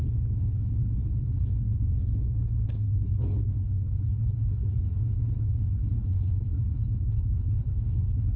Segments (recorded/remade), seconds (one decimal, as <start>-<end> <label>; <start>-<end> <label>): 0.0-8.4 remade